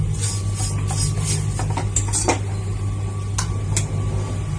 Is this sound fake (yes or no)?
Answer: no